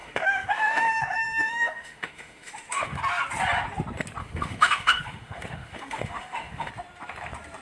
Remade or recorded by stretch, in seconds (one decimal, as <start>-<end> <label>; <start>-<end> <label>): 0.0-3.0 remade; 3.0-4.2 recorded; 4.2-6.7 remade; 6.7-7.6 recorded